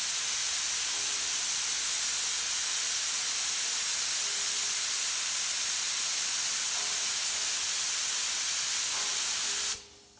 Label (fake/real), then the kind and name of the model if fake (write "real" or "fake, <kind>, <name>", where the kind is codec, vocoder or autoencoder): real